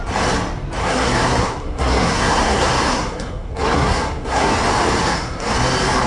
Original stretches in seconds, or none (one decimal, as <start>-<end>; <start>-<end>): 0.0-0.8; 4.5-5.0; 5.5-6.1